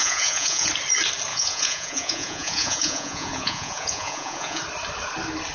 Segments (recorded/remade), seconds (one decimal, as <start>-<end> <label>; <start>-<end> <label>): 0.0-0.7 remade; 0.7-1.3 recorded; 1.3-4.6 remade; 4.6-5.5 recorded